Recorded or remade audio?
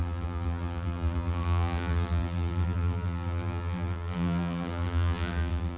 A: remade